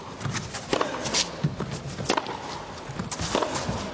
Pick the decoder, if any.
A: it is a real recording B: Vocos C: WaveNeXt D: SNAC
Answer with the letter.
A